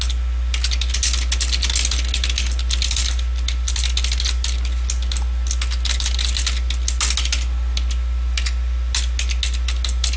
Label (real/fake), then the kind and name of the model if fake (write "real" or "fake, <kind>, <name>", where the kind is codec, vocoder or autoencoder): real